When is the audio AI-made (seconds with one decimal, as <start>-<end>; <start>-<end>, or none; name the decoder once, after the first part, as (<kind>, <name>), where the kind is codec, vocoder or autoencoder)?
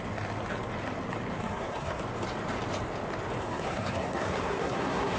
1.4-2.0 (codec, SNAC); 3.4-5.2